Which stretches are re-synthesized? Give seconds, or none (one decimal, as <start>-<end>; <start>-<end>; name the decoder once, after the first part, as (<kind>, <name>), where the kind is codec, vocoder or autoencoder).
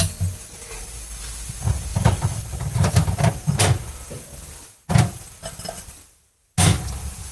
none